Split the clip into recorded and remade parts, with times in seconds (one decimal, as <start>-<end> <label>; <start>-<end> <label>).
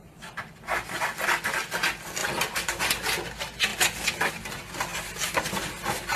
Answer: 0.0-2.2 recorded; 2.2-2.8 remade; 2.8-3.7 recorded; 3.7-4.3 remade; 4.3-4.9 recorded; 4.9-5.4 remade; 5.4-6.2 recorded